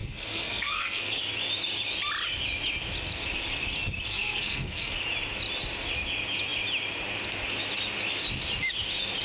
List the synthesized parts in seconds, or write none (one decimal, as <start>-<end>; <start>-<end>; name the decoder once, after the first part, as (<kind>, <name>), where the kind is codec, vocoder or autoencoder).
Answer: 0.0-1.2 (codec, SNAC); 4.1-5.0

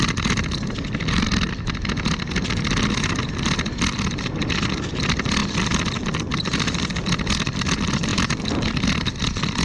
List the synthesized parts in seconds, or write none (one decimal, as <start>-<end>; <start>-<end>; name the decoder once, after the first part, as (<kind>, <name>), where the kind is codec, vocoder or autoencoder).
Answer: 8.1-8.9 (vocoder, BigVGAN v2)

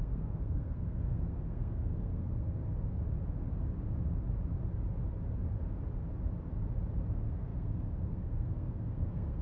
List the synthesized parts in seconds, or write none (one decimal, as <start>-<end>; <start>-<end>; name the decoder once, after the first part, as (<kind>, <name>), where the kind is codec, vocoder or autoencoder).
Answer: 0.0-2.6 (codec, SNAC); 7.1-9.4

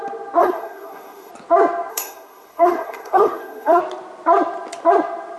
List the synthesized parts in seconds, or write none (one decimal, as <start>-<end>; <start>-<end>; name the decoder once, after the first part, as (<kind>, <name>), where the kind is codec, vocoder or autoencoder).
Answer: 0.4-1.3 (codec, SNAC); 1.9-3.8

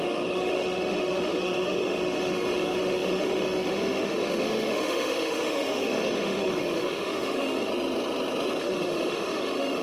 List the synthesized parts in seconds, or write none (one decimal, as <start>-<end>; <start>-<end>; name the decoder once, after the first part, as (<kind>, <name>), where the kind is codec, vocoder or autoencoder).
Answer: 0.0-7.7 (autoencoder, DAC-VAE); 8.6-9.8

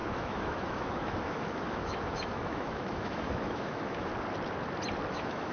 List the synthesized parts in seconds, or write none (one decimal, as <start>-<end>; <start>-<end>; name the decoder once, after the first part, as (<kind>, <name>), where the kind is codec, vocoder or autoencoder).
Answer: 0.0-4.1 (autoencoder, DAC-VAE); 5.1-5.5

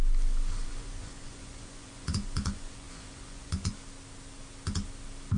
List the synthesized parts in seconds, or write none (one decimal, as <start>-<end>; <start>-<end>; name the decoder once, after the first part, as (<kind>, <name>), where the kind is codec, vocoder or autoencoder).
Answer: 0.6-3.7 (vocoder, Vocos)